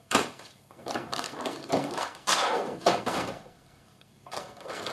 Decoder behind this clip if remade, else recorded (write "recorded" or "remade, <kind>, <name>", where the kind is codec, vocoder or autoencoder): remade, codec, SNAC